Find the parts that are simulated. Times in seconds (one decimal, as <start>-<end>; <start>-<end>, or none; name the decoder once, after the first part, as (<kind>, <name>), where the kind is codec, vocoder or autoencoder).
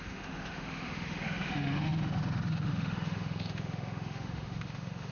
0.0-5.1 (autoencoder, DAC-VAE)